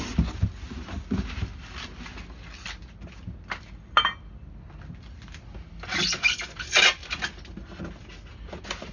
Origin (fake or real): real